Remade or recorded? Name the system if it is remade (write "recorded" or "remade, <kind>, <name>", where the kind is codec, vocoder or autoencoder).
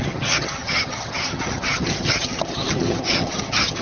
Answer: remade, vocoder, HiFi-GAN